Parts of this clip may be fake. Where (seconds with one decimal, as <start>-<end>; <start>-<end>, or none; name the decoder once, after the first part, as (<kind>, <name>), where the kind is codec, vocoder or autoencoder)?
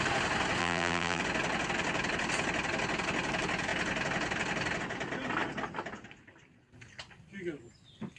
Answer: 0.6-1.2 (vocoder, BigVGAN v2)